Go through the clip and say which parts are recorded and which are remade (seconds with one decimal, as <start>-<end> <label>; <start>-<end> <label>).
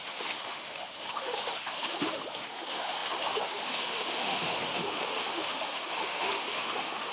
0.0-7.1 remade